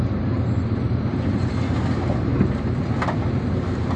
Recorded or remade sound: remade